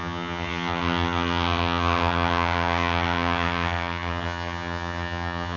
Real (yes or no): no